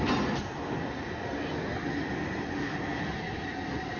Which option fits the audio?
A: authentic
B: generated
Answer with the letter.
A